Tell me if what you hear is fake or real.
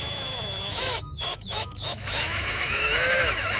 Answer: fake